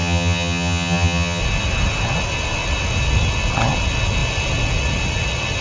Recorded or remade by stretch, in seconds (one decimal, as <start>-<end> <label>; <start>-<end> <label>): 0.0-1.4 remade; 1.4-5.6 recorded